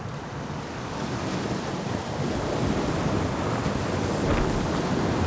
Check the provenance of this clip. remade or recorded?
remade